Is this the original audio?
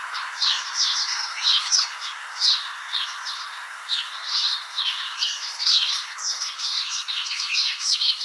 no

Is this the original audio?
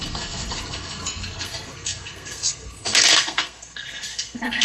no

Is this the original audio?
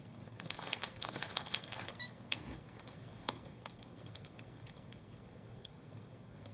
no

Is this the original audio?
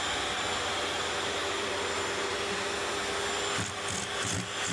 yes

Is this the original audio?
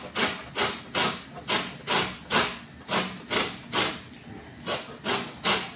yes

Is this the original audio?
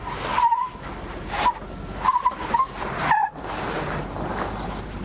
yes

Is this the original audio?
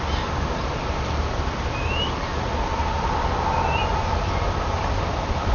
yes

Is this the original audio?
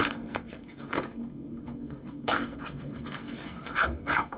no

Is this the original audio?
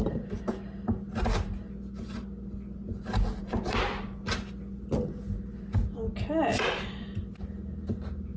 yes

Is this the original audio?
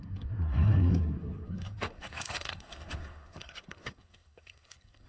no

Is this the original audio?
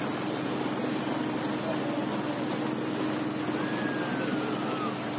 yes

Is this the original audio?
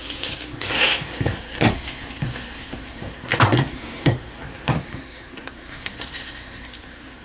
no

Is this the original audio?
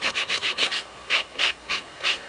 no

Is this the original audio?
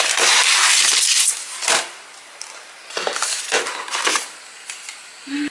yes